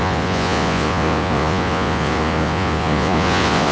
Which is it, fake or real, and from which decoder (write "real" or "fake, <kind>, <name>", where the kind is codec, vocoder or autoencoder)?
fake, vocoder, Vocos